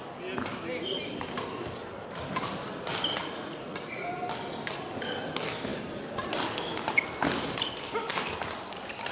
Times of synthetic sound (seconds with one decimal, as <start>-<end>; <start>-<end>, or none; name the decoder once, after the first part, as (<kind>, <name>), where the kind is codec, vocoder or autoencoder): 3.2-3.8 (vocoder, Vocos)